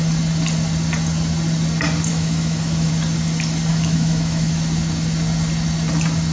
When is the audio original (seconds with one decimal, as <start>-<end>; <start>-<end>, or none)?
0.0-2.1; 2.9-3.7; 4.5-6.3